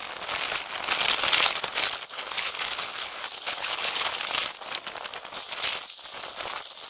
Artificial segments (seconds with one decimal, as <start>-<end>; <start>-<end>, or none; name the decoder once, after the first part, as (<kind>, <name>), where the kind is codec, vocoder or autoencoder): 2.1-4.1 (codec, HILCodec)